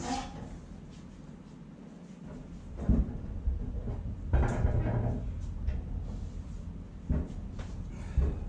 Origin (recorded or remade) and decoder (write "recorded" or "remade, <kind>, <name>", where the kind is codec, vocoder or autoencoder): recorded